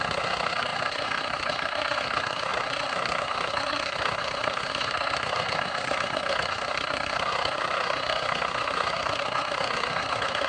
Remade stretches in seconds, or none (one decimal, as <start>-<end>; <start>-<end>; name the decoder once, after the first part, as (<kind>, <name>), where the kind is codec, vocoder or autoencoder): 0.0-10.5 (codec, SNAC)